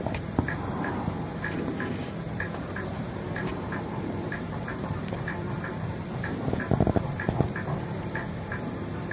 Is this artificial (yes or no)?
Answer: yes